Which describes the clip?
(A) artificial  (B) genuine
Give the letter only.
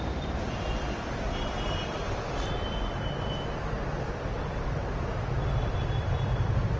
A